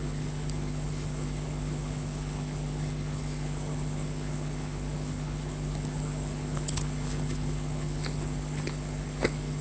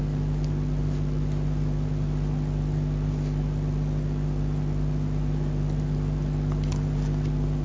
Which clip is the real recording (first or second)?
second